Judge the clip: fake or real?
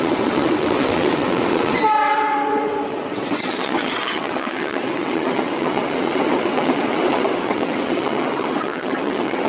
fake